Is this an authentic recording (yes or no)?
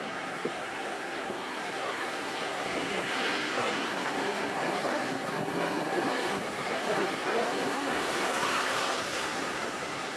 no